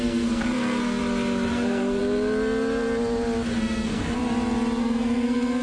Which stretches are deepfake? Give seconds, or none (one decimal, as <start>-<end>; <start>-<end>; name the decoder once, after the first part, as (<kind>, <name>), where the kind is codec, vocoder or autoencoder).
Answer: 0.0-1.0 (codec, SNAC); 1.5-2.0; 3.6-4.2; 4.8-5.6